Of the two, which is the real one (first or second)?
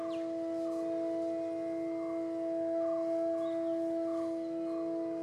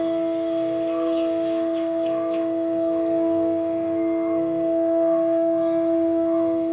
first